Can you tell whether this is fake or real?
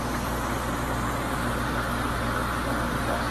real